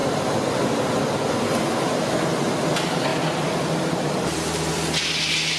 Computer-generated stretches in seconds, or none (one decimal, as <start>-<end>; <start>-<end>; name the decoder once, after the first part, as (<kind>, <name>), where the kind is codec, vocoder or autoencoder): 2.5-5.6 (vocoder, BigVGAN v2)